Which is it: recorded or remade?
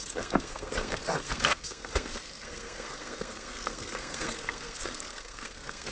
remade